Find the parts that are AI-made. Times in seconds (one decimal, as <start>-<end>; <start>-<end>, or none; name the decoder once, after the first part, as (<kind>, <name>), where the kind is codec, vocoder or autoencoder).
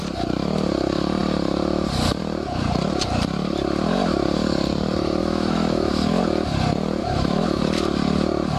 5.2-5.9 (autoencoder, DAC-VAE); 7.0-7.6